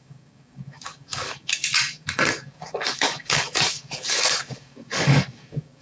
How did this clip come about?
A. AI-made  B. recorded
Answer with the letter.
A